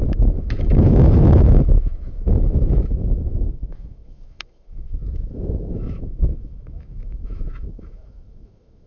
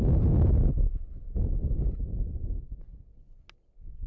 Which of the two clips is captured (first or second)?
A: second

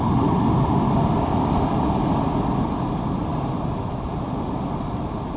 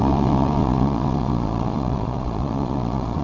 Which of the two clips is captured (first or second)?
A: first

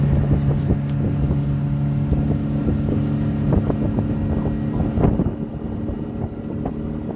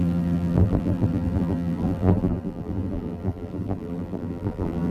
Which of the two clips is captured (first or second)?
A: first